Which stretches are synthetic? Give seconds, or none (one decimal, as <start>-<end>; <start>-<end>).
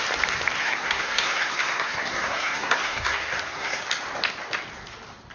0.6-3.8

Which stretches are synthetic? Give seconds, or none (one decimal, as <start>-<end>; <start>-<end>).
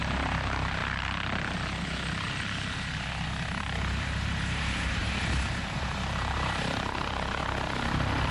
0.0-0.8; 3.6-7.4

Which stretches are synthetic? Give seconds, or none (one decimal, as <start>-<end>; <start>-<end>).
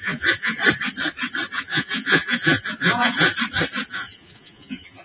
0.0-0.6; 1.5-3.3; 3.9-5.0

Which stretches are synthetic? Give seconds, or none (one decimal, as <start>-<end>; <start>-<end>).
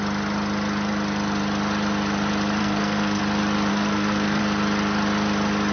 2.6-3.2; 3.7-4.4